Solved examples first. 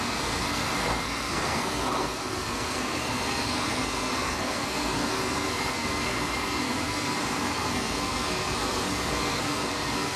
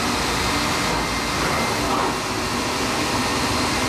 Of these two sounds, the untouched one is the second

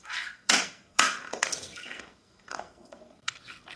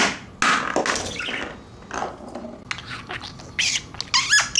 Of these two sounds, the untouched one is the second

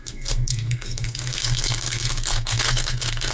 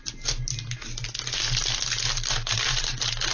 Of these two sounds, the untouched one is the second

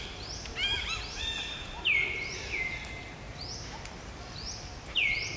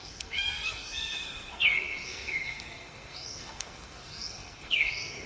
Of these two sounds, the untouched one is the first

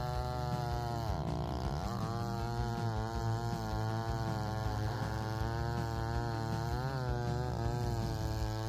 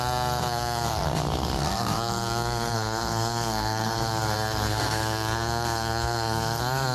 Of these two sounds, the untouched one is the first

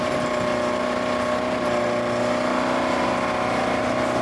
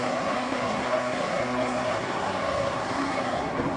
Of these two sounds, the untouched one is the first